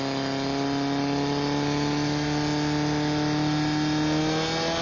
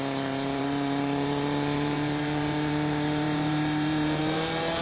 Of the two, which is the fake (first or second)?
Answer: second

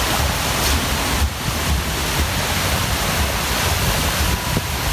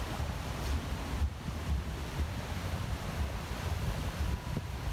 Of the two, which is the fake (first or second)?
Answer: second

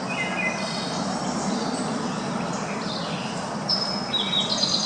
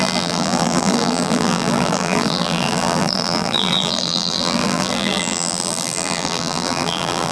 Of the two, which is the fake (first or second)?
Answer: second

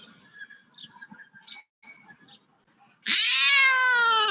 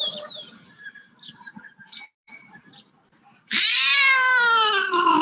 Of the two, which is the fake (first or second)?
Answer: second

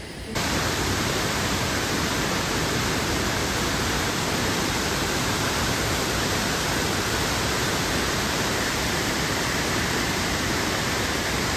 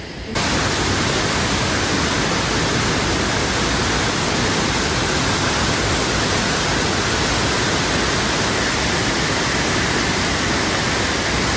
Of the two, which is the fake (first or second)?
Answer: first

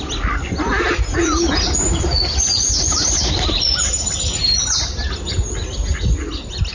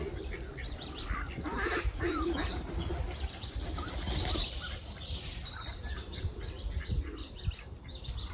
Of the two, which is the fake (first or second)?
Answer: second